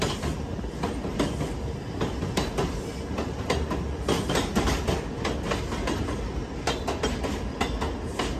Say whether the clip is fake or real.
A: real